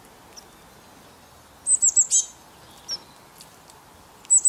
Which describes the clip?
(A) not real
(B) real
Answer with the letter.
B